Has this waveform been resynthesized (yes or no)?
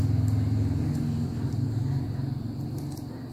no